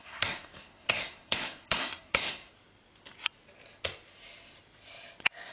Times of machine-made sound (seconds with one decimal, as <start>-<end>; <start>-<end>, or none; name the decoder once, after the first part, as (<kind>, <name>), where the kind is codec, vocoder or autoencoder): 0.0-2.5 (codec, SNAC)